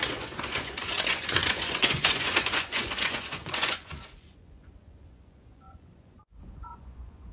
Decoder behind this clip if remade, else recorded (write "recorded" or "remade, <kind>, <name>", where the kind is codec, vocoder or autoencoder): remade, vocoder, Vocos